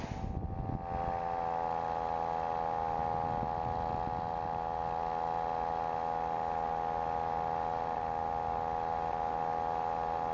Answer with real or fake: real